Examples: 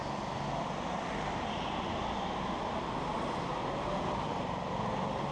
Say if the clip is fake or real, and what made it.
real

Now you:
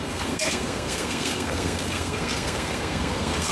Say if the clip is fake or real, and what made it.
fake, codec, SNAC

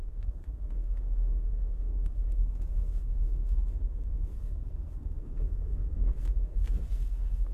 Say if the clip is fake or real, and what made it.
fake, codec, SNAC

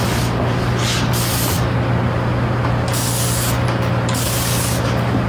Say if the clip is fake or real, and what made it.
real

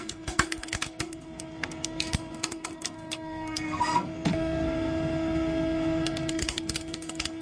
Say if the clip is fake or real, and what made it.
fake, codec, SNAC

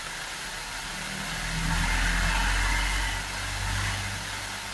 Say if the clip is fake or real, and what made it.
real